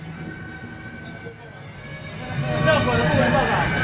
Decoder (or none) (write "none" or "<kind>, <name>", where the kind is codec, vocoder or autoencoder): none